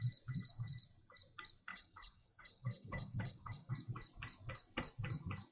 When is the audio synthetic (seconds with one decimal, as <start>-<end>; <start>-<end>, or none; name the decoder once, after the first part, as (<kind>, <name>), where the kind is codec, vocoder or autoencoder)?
1.7-3.7 (codec, DAC)